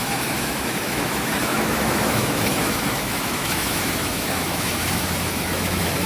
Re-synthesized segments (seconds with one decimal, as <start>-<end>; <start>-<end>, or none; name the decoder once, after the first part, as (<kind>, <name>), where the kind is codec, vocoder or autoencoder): 0.0-6.1 (autoencoder, DAC-VAE)